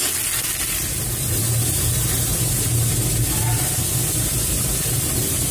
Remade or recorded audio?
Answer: recorded